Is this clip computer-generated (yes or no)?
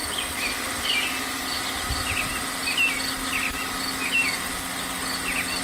no